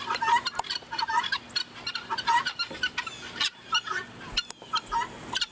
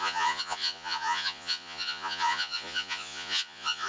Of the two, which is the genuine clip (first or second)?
first